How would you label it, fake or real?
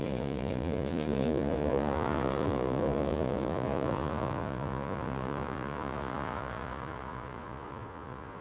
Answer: fake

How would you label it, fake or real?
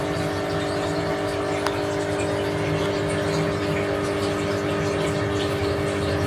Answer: real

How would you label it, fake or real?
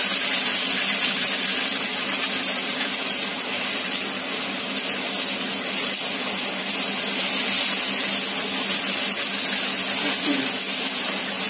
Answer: real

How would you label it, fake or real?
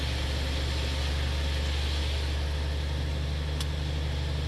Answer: real